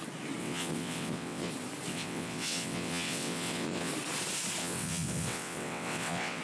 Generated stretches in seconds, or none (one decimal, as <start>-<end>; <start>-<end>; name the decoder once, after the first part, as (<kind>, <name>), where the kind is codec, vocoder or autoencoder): 0.4-1.5 (vocoder, WaveNeXt); 1.9-3.9; 4.6-6.4